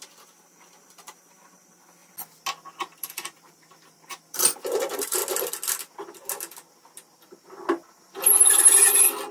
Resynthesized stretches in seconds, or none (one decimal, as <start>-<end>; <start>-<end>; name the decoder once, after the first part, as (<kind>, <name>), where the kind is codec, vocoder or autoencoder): 0.0-2.0 (vocoder, BigVGAN v2); 2.8-5.2